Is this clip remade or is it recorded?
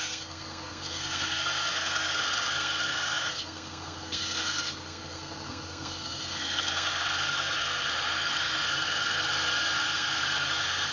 remade